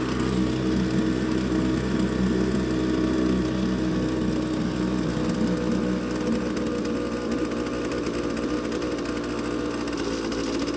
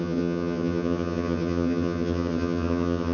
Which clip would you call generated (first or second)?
second